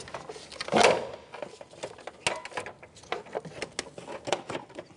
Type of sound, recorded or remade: recorded